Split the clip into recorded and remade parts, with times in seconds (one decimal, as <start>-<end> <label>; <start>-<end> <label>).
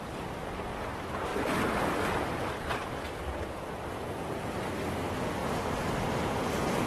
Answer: 0.0-6.9 recorded